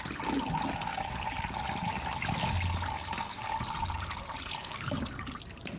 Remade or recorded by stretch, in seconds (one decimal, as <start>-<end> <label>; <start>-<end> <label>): 0.0-4.6 recorded; 4.6-5.2 remade; 5.2-5.8 recorded